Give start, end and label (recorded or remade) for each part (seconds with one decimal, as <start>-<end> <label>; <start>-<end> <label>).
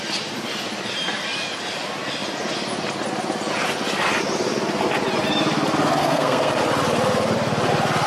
0.0-6.0 recorded; 6.0-6.5 remade; 6.5-8.1 recorded